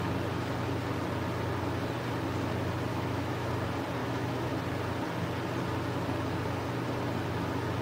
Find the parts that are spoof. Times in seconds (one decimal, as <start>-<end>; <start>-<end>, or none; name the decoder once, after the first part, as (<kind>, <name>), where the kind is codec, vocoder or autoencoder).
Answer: 2.9-3.5 (autoencoder, DAC-VAE); 4.0-4.5